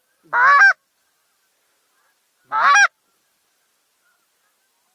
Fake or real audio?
real